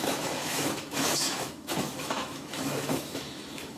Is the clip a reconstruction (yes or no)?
yes